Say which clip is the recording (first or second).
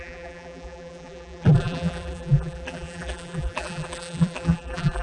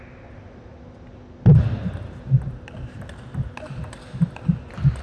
second